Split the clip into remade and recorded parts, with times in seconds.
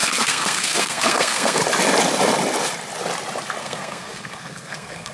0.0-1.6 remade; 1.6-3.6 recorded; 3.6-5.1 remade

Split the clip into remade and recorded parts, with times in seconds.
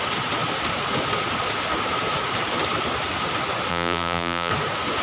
0.0-3.7 recorded; 3.7-4.5 remade; 4.5-5.0 recorded